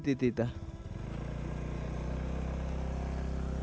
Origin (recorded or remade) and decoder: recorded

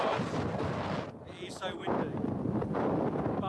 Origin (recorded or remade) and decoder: recorded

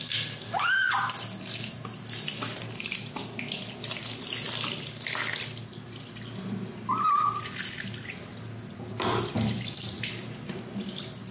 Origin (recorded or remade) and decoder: recorded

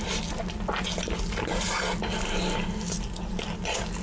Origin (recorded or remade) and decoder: recorded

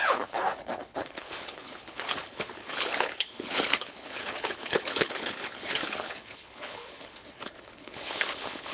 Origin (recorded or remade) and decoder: remade, codec, HILCodec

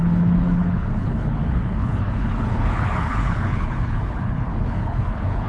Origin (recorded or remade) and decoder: remade, codec, HILCodec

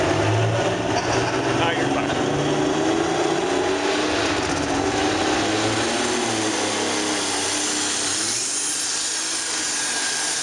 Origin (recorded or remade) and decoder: recorded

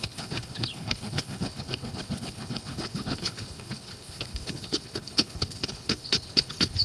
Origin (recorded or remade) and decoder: remade, codec, HILCodec